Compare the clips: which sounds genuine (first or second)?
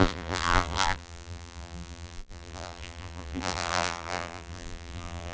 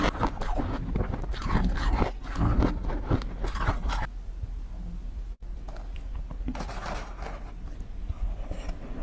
second